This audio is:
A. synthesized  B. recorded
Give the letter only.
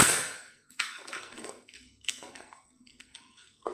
A